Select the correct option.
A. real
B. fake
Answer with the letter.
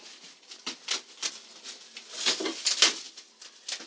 A